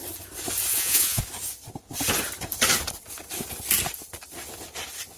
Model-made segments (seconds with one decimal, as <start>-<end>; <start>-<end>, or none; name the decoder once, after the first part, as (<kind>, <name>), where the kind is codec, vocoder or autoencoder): 0.7-1.2 (vocoder, Vocos)